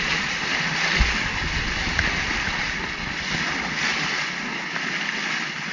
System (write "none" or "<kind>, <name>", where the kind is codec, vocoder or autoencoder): none